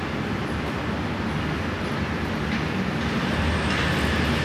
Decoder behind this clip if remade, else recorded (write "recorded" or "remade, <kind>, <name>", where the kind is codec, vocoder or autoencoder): recorded